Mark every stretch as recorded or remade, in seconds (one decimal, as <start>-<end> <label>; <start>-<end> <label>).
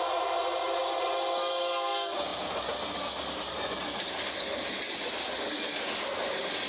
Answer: 0.0-6.7 recorded